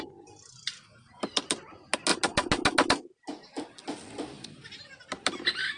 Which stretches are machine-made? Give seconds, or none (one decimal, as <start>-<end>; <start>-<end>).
none